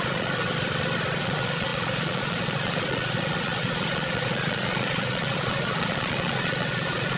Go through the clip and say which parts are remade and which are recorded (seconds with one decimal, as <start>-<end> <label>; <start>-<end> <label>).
0.0-0.5 remade; 0.5-1.2 recorded; 1.2-7.2 remade